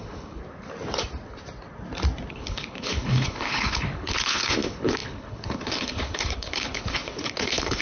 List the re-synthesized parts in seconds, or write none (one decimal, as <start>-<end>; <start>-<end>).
0.0-0.4; 2.3-7.8